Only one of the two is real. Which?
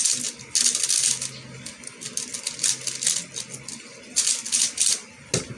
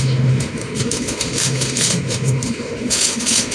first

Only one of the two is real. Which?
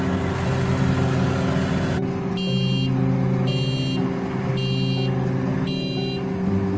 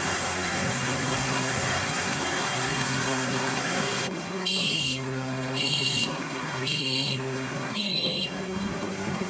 first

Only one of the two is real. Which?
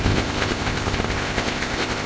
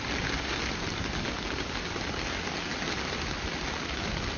second